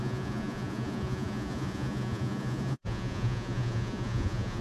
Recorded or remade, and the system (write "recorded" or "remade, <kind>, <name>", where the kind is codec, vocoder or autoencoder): remade, vocoder, Vocos